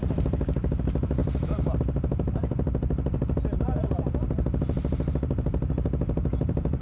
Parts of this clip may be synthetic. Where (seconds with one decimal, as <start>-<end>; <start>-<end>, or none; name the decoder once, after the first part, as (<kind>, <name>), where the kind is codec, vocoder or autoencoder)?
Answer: 1.2-1.8 (vocoder, BigVGAN v2)